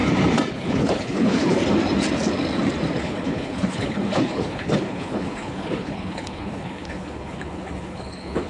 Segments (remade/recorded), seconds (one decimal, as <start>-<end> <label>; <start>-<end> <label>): 0.0-0.5 recorded; 0.5-1.6 remade; 1.6-3.0 recorded; 3.0-8.5 remade